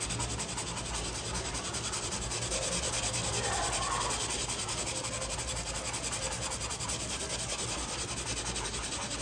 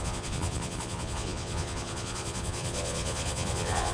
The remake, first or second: second